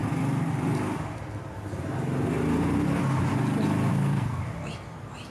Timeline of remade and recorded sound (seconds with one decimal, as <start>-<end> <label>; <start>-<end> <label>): 0.0-3.9 recorded; 3.9-4.4 remade; 4.4-5.3 recorded